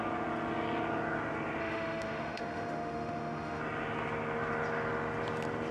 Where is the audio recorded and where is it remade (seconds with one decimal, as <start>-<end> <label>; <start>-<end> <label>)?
0.0-1.6 recorded; 1.6-3.6 remade; 3.6-5.7 recorded